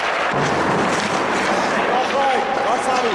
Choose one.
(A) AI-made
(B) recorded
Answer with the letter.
B